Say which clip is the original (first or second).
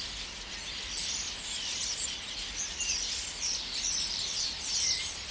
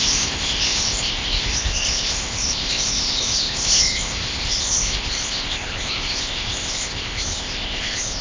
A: first